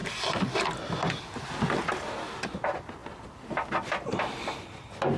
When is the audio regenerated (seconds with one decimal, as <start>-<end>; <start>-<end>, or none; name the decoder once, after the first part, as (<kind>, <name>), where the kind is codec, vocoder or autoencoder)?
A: none